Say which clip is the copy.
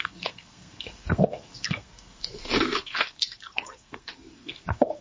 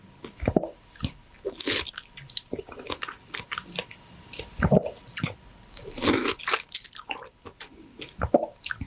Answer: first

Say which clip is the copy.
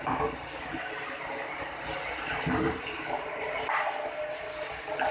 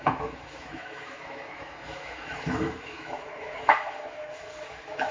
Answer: second